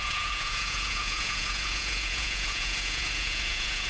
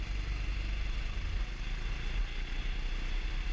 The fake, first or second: first